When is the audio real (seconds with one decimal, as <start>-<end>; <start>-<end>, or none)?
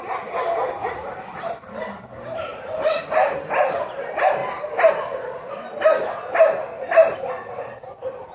0.0-2.5; 3.8-4.4; 4.9-8.3